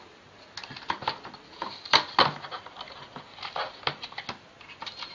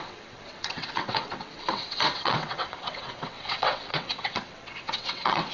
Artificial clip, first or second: second